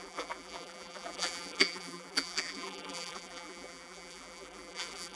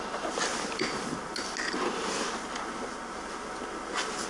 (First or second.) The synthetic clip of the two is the first